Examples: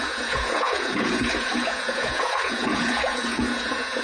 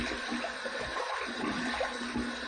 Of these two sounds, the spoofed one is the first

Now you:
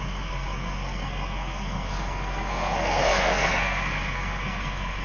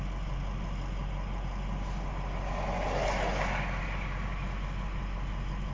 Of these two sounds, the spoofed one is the first